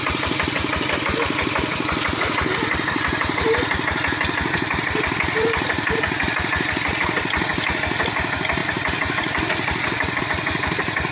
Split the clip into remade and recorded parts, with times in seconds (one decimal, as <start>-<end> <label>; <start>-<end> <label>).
0.0-8.6 recorded; 8.6-10.2 remade; 10.2-11.1 recorded